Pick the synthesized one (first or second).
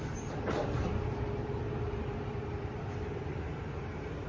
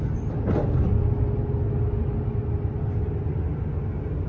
first